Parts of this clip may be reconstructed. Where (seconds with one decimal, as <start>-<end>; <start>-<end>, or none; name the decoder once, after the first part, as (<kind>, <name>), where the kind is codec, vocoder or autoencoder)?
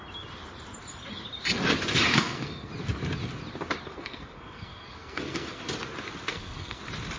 2.1-2.7 (codec, SNAC); 3.9-5.6; 6.3-6.8